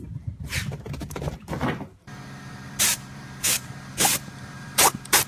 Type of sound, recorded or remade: remade